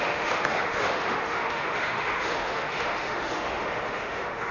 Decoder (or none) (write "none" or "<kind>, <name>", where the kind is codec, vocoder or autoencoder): autoencoder, DAC-VAE